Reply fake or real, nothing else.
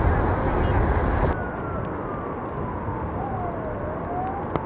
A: real